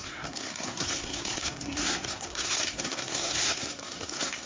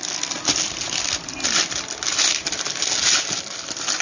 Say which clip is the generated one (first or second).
first